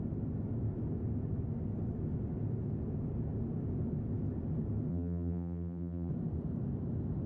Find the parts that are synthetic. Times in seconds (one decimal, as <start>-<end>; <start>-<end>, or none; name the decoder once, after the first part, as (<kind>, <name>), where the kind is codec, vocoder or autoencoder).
4.9-6.1 (vocoder, BigVGAN v2)